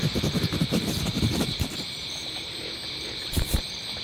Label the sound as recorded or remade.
remade